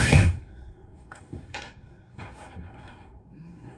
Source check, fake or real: fake